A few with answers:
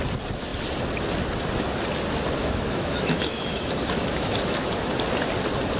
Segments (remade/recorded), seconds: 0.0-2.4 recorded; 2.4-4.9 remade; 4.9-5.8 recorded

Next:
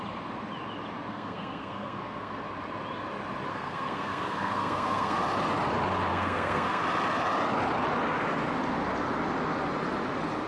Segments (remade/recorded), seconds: 0.0-1.1 recorded; 1.1-2.4 remade; 2.4-3.5 recorded; 3.5-5.2 remade; 5.2-6.1 recorded; 6.1-6.8 remade; 6.8-10.5 recorded

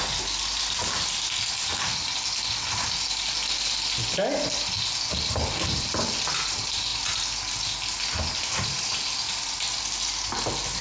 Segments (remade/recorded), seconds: 0.0-10.8 recorded

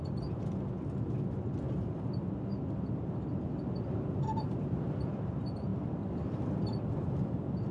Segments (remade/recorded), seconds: 0.0-7.7 recorded

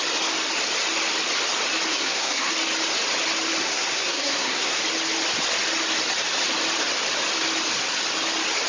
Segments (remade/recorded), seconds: 0.0-1.9 recorded; 1.9-2.5 remade; 2.5-3.6 recorded; 3.6-4.8 remade; 4.8-8.7 recorded